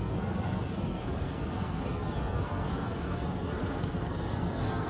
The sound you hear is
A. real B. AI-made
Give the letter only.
B